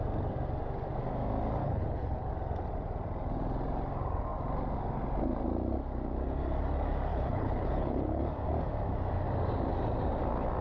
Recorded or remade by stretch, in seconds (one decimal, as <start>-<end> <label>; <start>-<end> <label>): 0.0-1.6 recorded; 1.6-2.3 remade; 2.3-7.1 recorded; 7.1-8.2 remade; 8.2-10.6 recorded